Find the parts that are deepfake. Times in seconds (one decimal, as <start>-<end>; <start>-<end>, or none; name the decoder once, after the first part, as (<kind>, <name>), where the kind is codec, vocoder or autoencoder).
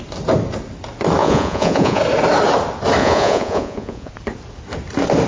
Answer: 1.2-2.0 (vocoder, Vocos); 3.0-4.1